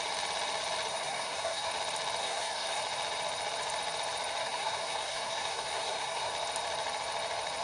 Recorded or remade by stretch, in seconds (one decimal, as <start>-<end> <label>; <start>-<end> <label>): 0.0-0.9 recorded; 0.9-1.7 remade; 1.7-2.2 recorded; 2.2-2.8 remade; 2.8-4.4 recorded; 4.4-6.3 remade; 6.3-7.6 recorded